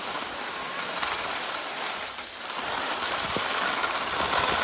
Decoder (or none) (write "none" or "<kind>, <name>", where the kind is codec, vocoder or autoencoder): none